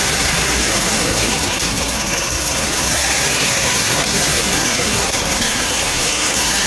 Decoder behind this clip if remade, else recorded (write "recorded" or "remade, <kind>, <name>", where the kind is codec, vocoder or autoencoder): remade, codec, SNAC